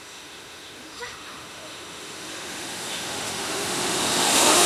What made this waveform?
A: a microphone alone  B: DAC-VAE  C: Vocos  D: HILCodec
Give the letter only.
B